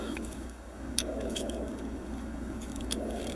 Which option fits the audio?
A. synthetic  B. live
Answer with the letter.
A